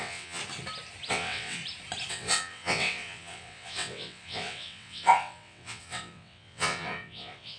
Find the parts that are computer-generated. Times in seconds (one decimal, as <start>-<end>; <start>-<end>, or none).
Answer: 0.0-0.4; 1.1-1.6; 2.1-7.6

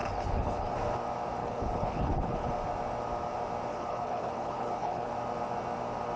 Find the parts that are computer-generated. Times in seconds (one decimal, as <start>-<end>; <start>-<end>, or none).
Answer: 0.0-0.7; 1.4-2.5; 3.7-5.1

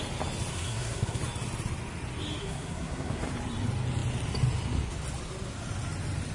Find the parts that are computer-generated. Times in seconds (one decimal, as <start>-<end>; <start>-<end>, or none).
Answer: 0.5-1.2; 2.4-3.2